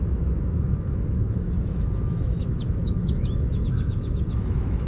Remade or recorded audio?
remade